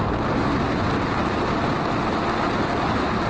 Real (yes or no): yes